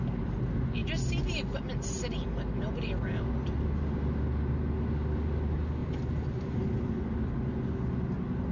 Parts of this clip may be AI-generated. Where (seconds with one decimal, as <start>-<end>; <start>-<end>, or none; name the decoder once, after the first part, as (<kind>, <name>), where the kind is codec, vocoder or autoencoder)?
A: 5.8-6.6 (vocoder, BigVGAN v2)